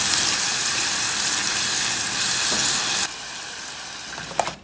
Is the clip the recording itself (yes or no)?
yes